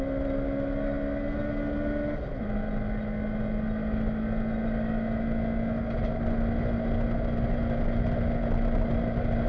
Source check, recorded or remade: recorded